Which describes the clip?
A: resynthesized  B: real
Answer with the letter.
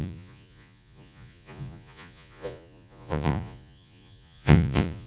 A